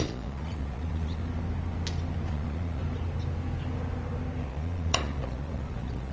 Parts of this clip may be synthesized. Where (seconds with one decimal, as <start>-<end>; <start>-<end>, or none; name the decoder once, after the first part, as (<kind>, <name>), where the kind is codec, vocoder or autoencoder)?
0.0-1.2 (vocoder, Vocos); 2.3-2.8; 4.4-6.1

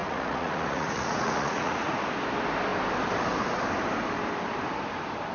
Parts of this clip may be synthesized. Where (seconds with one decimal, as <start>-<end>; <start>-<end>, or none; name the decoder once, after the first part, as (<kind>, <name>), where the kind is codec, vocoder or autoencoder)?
0.0-1.9 (vocoder, Vocos)

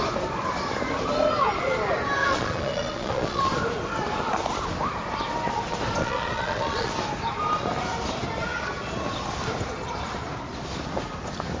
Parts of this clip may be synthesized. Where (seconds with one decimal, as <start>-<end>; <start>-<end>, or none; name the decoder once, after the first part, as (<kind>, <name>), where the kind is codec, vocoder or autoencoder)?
2.2-3.4 (vocoder, Vocos); 6.0-6.9

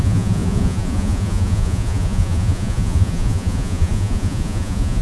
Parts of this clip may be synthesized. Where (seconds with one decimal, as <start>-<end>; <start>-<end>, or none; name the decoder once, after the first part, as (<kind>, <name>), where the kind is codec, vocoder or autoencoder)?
0.0-5.0 (vocoder, Vocos)

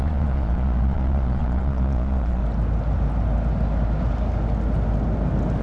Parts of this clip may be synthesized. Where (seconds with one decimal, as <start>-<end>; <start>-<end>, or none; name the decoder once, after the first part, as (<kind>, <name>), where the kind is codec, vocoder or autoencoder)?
0.0-2.4 (vocoder, Vocos)

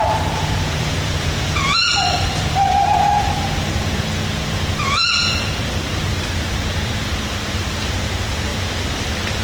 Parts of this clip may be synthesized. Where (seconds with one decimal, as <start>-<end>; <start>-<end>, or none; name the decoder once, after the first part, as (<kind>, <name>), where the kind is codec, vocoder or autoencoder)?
0.0-8.5 (vocoder, Vocos)

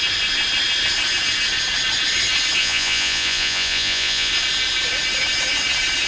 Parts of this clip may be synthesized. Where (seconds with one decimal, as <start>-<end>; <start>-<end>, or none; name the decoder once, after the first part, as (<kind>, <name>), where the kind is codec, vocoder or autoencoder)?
2.6-4.3 (vocoder, Vocos)

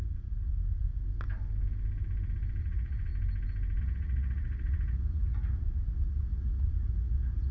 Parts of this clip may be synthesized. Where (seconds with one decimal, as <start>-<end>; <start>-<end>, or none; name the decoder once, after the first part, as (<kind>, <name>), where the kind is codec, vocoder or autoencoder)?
0.0-0.9 (vocoder, Vocos); 2.6-3.1; 3.8-7.5